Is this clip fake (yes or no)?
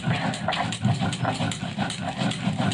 no